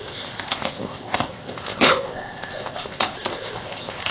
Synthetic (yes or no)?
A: yes